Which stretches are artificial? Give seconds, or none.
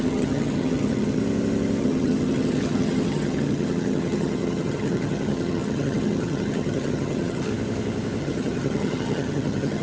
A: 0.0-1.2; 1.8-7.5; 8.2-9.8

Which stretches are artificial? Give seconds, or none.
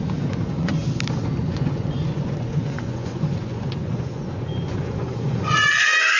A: 0.0-0.8; 1.4-6.2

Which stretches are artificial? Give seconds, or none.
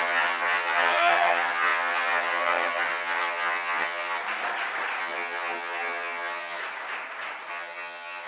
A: 0.0-4.2; 5.0-6.6; 7.5-8.3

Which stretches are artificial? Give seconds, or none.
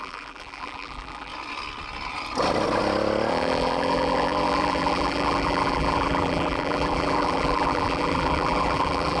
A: 0.0-1.3; 3.3-9.2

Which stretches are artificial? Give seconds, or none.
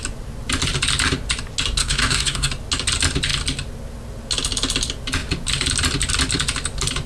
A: 1.8-2.5